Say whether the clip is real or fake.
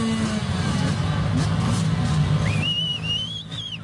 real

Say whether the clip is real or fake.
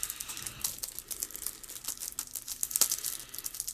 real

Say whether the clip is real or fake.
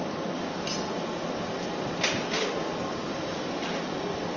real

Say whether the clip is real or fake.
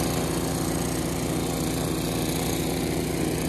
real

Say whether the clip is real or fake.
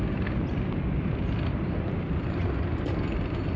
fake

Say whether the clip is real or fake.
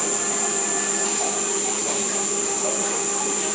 fake